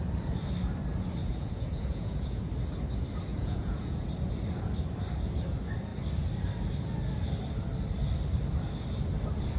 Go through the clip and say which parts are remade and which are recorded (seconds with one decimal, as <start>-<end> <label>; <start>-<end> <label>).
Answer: 0.0-1.2 recorded; 1.2-2.5 remade; 2.5-3.3 recorded; 3.3-4.1 remade; 4.1-9.6 recorded

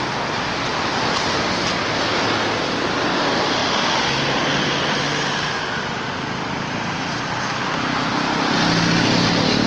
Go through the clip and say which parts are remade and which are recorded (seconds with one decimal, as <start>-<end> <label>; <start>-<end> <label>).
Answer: 0.0-9.7 recorded

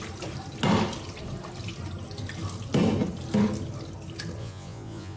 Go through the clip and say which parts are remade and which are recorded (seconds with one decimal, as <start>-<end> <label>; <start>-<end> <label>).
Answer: 0.0-4.4 recorded; 4.4-5.2 remade